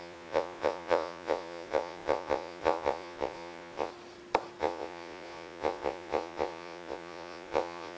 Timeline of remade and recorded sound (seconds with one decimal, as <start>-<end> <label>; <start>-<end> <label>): 0.0-3.9 remade; 3.9-4.6 recorded; 4.6-8.0 remade